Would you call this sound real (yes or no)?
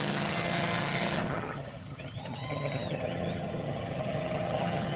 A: no